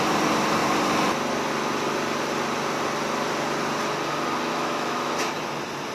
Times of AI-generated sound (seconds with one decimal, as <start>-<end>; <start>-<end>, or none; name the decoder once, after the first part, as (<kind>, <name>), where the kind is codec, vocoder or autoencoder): 4.5-5.4 (autoencoder, DAC-VAE)